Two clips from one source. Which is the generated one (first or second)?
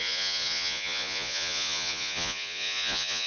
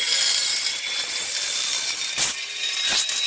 first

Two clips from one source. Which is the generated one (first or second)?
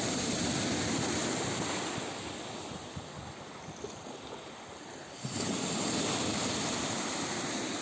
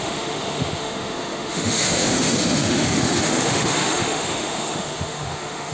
second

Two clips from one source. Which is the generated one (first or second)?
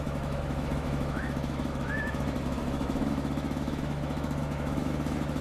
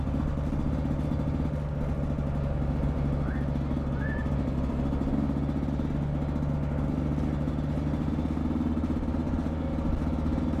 first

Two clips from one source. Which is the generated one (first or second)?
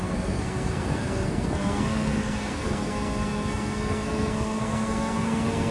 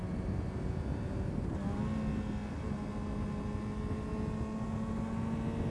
first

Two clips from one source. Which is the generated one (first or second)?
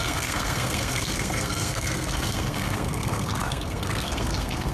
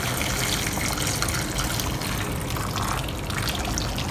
first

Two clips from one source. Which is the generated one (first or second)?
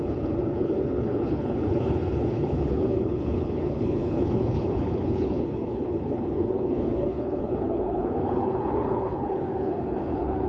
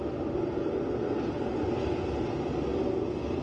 first